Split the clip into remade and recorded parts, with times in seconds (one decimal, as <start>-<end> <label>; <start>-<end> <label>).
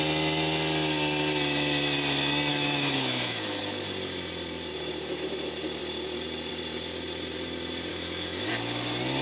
0.0-2.5 recorded; 2.5-3.6 remade; 3.6-7.9 recorded; 7.9-8.5 remade; 8.5-9.2 recorded